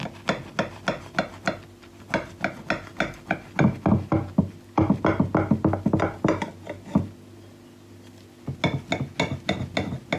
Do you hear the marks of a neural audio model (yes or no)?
no